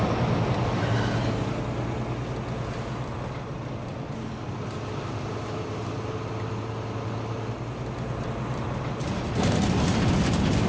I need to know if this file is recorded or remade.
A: recorded